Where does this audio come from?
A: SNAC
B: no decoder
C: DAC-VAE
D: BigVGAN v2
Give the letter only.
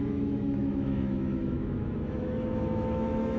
C